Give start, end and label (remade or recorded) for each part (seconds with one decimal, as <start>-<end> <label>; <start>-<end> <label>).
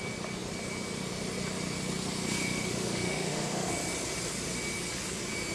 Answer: 0.0-2.4 recorded; 2.4-3.7 remade; 3.7-5.5 recorded